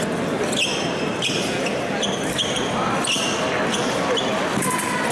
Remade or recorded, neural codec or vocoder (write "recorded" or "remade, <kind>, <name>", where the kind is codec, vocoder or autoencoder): recorded